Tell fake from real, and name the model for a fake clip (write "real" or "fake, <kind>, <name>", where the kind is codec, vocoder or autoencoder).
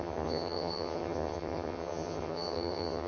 fake, vocoder, HiFi-GAN